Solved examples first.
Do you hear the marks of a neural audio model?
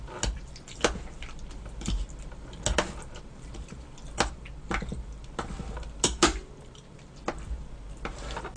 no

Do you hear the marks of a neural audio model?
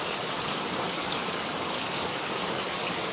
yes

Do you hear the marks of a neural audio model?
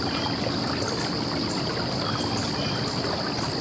no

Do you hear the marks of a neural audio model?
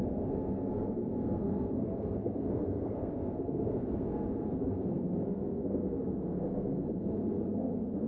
yes